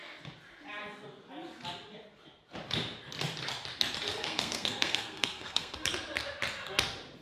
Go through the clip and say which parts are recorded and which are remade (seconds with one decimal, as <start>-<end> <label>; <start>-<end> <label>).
0.0-4.1 recorded; 4.1-5.9 remade; 5.9-7.2 recorded